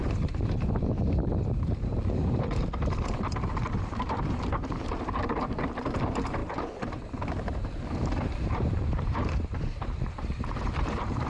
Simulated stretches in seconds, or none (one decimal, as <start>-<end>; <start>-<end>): 0.0-11.3